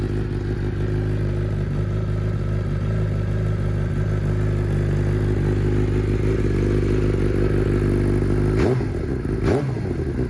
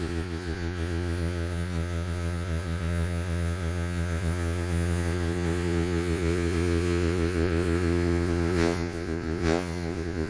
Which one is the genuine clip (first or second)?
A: first